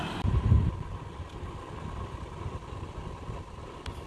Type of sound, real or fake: real